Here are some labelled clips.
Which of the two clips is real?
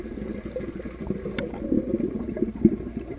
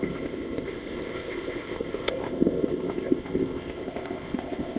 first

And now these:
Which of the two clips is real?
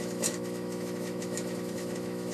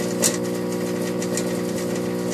second